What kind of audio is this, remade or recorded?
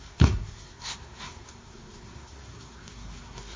remade